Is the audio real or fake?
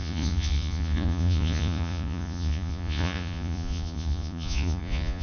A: fake